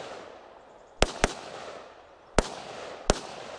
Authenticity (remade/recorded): recorded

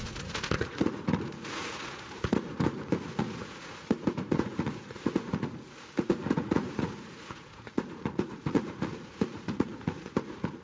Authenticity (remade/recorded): remade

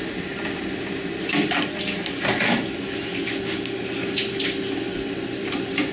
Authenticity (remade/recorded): recorded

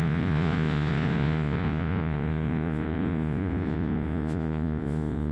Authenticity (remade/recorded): remade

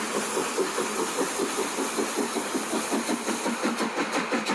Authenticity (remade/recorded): recorded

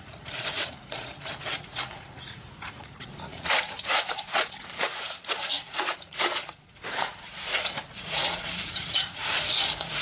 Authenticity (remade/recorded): remade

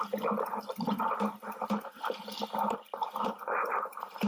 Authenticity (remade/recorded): recorded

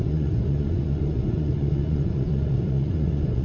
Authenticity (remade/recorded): remade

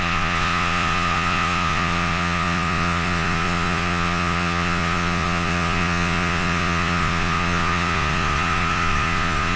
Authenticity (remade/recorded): remade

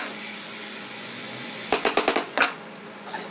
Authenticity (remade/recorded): remade